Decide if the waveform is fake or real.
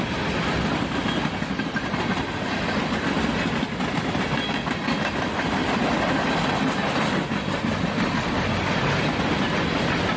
real